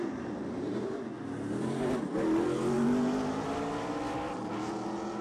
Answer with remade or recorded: recorded